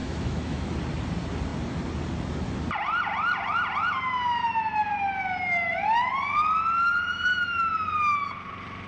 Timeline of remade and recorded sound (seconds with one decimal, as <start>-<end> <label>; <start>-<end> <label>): 0.0-0.7 remade; 0.7-8.9 recorded